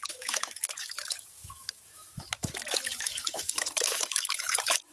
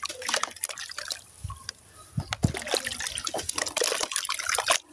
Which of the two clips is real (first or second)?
second